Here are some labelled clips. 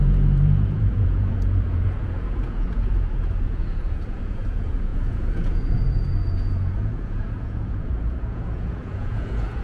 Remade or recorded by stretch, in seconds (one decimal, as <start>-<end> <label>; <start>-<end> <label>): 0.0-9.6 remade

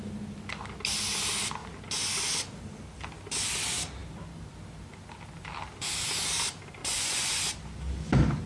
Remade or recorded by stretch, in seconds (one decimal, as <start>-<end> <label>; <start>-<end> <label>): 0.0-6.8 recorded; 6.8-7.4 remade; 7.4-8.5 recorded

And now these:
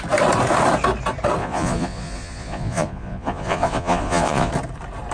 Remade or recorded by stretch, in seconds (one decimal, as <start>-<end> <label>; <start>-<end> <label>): 0.0-1.4 recorded; 1.4-4.5 remade; 4.5-5.1 recorded

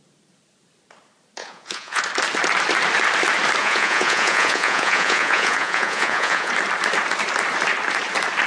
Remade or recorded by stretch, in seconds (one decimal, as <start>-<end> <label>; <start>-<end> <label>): 0.0-1.4 recorded; 1.4-2.0 remade; 2.0-3.6 recorded; 3.6-6.5 remade; 6.5-8.5 recorded

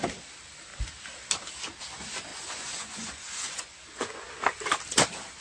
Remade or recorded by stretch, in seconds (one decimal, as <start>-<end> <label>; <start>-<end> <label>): 0.0-2.3 recorded; 2.3-4.3 remade; 4.3-5.4 recorded

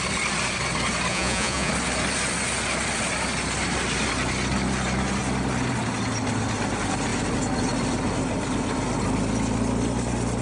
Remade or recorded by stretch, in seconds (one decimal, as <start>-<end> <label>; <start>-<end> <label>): 0.0-1.1 recorded; 1.1-1.7 remade; 1.7-10.4 recorded